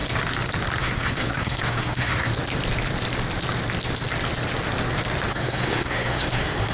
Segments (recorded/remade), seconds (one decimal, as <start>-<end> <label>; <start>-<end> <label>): 0.0-0.8 recorded; 0.8-2.3 remade; 2.3-5.3 recorded; 5.3-6.7 remade

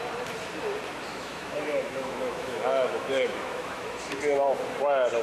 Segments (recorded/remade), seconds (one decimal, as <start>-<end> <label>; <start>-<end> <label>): 0.0-1.1 recorded; 1.1-4.2 remade; 4.2-5.2 recorded

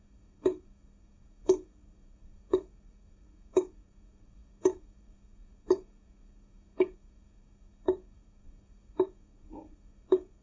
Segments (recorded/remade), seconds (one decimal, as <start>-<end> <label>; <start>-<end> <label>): 0.0-10.4 remade

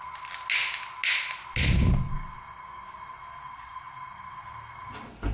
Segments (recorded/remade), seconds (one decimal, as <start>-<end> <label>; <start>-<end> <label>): 0.0-5.3 recorded